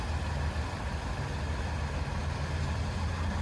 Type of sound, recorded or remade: recorded